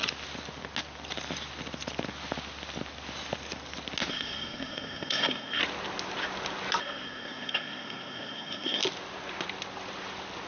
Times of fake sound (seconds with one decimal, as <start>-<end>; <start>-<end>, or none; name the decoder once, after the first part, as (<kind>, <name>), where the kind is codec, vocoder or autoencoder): 4.1-5.6 (codec, SNAC); 6.8-8.8